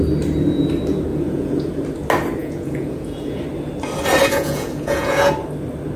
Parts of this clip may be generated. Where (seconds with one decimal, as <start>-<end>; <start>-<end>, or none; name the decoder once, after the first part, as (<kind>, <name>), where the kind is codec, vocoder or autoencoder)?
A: 1.1-1.7 (vocoder, Vocos); 2.4-3.4; 4.2-5.3